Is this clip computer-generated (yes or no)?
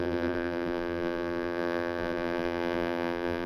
yes